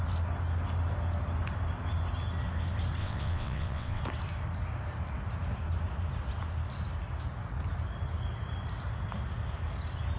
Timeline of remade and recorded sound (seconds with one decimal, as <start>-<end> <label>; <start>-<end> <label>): 0.0-3.0 recorded; 3.0-4.0 remade; 4.0-10.2 recorded